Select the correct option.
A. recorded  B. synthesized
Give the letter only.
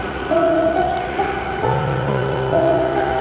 B